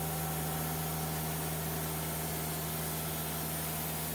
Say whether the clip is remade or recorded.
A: recorded